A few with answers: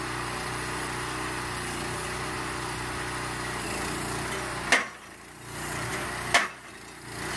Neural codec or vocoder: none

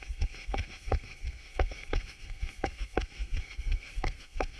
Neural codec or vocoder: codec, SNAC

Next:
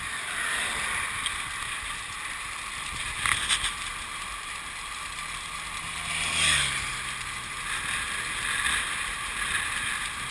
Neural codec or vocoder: none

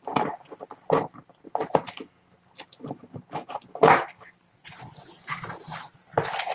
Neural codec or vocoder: none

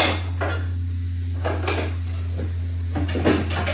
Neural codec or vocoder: none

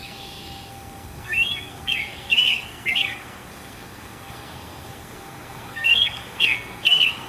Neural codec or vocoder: codec, SNAC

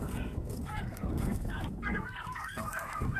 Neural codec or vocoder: codec, SNAC